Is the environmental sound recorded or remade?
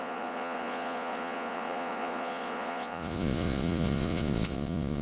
remade